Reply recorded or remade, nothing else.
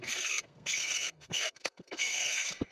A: remade